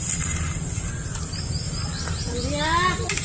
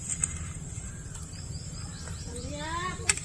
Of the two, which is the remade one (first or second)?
second